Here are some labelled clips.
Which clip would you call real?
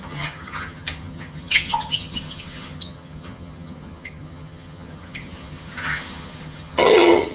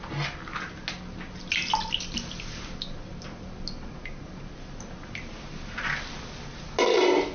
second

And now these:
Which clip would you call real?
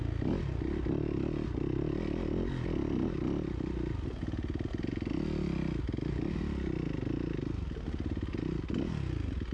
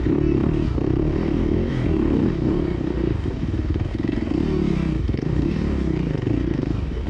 first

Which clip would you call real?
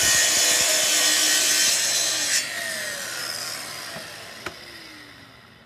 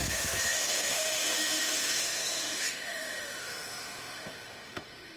first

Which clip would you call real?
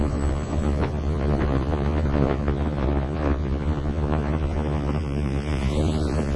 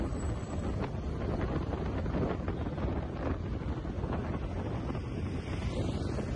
second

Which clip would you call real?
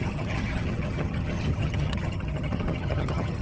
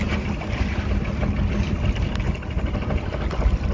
second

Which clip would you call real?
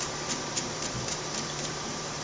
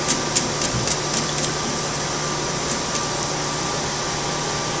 second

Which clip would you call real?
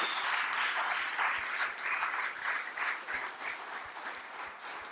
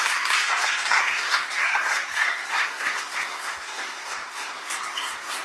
first